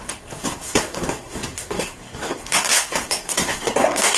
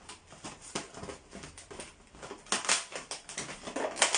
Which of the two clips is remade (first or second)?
first